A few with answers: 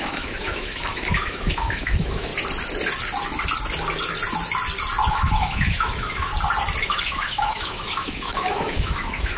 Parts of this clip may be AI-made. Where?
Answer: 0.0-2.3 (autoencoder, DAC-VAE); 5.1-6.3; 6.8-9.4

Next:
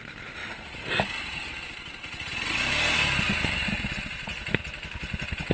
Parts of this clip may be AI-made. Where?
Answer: none